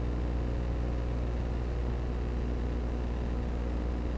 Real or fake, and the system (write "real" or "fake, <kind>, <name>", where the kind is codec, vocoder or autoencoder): real